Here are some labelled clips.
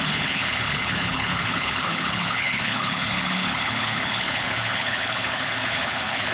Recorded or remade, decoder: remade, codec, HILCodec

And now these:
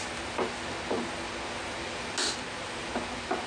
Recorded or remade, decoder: recorded